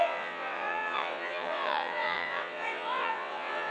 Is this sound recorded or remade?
remade